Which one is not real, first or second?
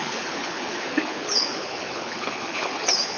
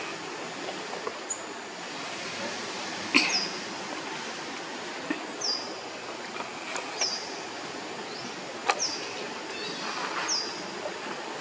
first